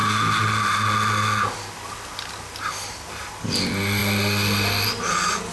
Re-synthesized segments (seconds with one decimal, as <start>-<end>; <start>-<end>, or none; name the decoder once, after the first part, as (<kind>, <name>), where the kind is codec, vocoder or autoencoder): none